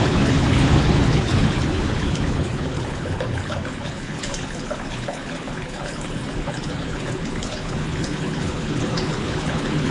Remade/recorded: remade